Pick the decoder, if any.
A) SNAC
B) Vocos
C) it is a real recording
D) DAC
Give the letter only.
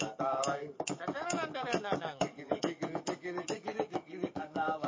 D